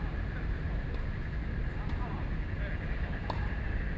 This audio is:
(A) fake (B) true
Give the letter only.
B